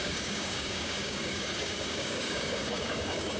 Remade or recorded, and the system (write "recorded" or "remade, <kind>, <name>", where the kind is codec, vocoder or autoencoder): remade, codec, DAC